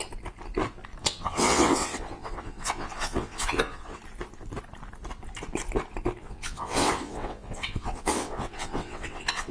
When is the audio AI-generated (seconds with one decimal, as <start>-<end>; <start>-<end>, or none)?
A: 1.0-4.0; 6.2-9.5